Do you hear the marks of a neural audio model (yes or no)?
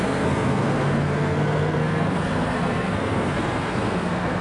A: yes